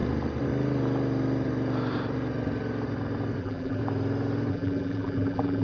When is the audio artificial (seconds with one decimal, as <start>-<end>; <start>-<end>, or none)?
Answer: 3.4-3.8; 4.5-5.6